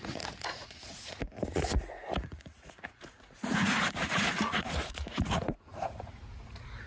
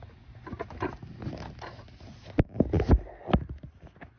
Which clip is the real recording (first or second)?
second